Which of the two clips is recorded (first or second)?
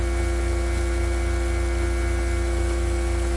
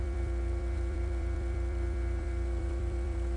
first